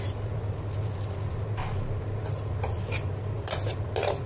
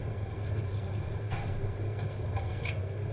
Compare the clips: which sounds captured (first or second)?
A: first